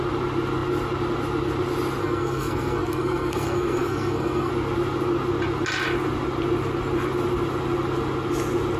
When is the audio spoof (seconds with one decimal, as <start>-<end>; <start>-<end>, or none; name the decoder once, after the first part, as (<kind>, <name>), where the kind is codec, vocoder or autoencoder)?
2.0-4.5 (codec, SNAC)

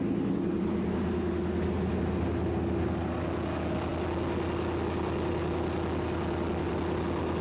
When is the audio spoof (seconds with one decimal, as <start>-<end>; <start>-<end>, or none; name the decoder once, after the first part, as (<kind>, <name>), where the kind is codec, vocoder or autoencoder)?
none